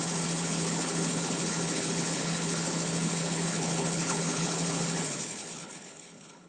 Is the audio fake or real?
fake